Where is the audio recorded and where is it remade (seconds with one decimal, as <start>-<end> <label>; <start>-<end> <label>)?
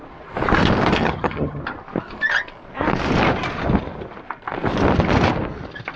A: 0.0-1.0 recorded; 1.0-1.6 remade; 1.6-6.0 recorded